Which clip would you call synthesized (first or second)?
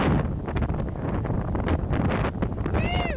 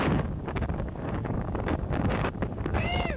second